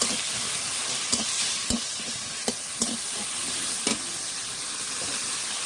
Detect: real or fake real